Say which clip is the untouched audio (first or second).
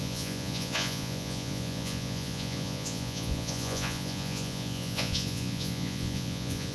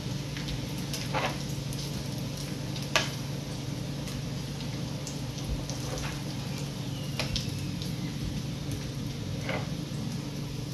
second